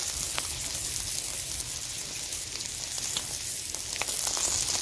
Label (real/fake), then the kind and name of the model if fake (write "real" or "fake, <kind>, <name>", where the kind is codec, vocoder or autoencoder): real